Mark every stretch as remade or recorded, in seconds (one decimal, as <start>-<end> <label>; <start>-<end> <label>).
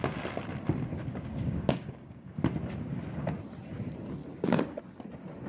0.0-0.9 recorded; 0.9-2.3 remade; 2.3-4.2 recorded; 4.2-4.8 remade; 4.8-5.5 recorded